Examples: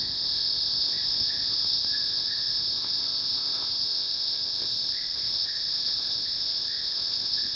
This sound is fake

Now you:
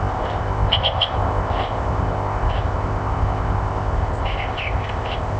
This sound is fake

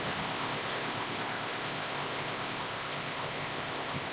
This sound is fake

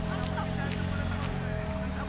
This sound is real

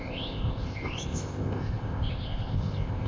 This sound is fake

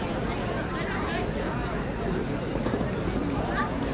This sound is real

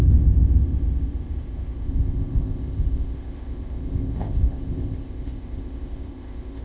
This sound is fake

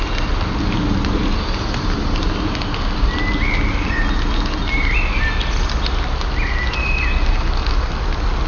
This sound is real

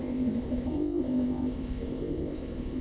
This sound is fake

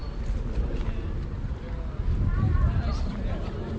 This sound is real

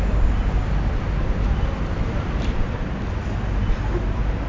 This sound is real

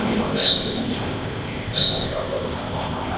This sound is fake